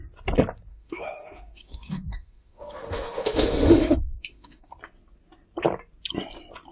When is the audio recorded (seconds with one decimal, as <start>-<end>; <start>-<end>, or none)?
0.0-0.7; 4.7-6.7